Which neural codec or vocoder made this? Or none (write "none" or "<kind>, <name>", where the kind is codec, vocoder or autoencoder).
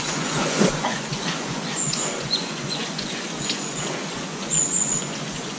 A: vocoder, Vocos